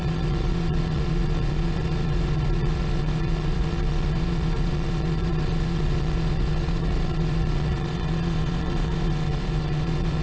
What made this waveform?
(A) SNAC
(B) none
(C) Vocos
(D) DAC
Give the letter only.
C